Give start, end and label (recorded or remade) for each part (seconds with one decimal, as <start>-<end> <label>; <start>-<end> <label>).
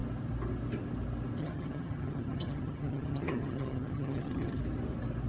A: 0.0-1.4 recorded; 1.4-4.6 remade; 4.6-5.3 recorded